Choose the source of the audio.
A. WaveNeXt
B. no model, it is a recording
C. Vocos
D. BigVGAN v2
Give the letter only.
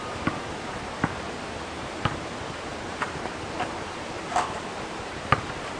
D